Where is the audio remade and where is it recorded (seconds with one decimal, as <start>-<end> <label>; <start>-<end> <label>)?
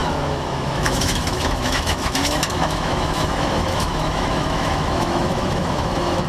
0.0-6.3 remade